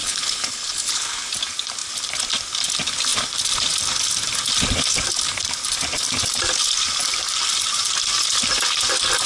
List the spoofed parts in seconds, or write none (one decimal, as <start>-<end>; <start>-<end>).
0.0-1.3